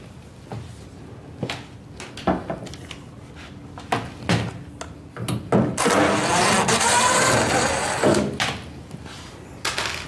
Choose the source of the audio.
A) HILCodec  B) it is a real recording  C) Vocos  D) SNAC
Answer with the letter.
B